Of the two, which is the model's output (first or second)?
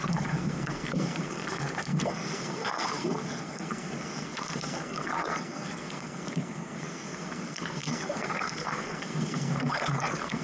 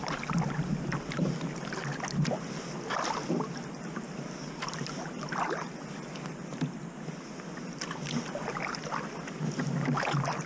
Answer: first